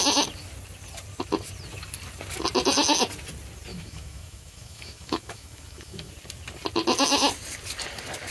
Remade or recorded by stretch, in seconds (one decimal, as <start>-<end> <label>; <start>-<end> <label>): 0.0-3.7 recorded; 3.7-6.1 remade; 6.1-8.3 recorded